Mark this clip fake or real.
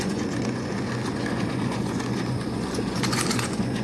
fake